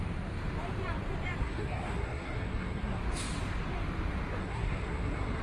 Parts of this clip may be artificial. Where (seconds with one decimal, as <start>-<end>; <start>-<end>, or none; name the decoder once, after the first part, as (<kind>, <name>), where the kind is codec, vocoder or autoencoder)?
1.4-3.0 (codec, SNAC); 4.4-5.4

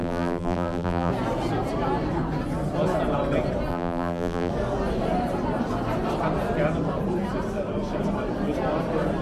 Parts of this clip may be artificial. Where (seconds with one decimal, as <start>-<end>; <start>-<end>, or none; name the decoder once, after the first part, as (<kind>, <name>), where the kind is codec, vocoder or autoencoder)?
0.0-1.1 (vocoder, BigVGAN v2); 3.7-4.5

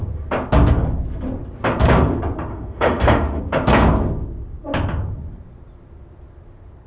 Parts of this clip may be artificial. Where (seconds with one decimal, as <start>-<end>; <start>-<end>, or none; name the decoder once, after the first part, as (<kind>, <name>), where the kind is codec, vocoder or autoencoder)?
2.5-3.4 (autoencoder, DAC-VAE)

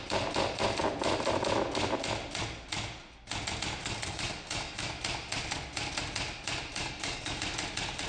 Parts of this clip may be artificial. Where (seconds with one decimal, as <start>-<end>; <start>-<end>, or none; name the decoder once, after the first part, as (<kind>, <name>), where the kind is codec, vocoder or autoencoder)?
3.8-4.9 (codec, DAC); 6.7-7.4

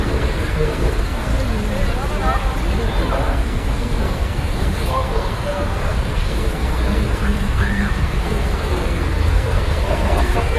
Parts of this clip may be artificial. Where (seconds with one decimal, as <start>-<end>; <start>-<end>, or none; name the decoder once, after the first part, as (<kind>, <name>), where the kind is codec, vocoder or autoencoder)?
0.0-1.3 (codec, SNAC); 3.2-10.6

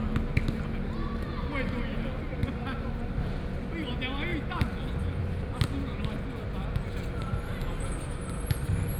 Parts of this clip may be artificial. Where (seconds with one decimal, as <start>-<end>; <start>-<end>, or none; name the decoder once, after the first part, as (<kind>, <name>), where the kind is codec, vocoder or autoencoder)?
none

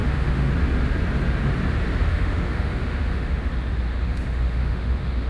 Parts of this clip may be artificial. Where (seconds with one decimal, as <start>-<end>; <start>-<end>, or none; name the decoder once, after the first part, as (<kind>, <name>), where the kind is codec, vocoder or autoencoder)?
0.0-0.5 (autoencoder, DAC-VAE); 2.1-3.4; 3.9-5.3

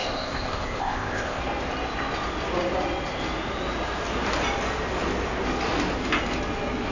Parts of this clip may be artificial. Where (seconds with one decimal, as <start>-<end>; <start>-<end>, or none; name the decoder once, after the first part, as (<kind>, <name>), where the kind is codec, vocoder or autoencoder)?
0.0-1.4 (codec, ZipCodec)